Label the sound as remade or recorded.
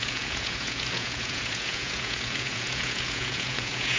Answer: remade